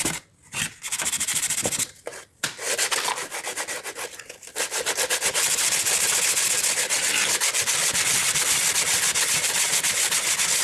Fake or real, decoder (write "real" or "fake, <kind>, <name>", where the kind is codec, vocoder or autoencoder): real